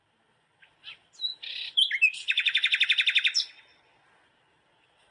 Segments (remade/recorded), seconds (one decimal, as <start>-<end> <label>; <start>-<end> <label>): 0.0-5.1 recorded